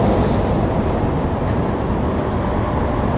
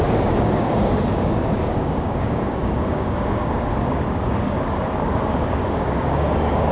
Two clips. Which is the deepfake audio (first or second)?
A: second